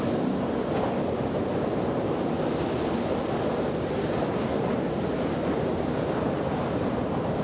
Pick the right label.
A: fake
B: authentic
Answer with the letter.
B